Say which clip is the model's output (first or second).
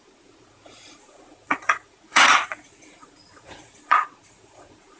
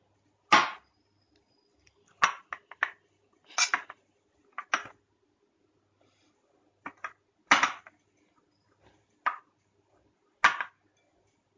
first